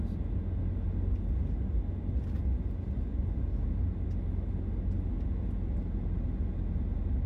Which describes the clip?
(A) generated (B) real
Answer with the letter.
B